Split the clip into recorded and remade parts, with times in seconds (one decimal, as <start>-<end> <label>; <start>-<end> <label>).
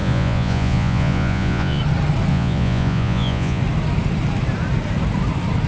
0.0-1.8 remade; 1.8-2.3 recorded; 2.3-3.6 remade; 3.6-5.7 recorded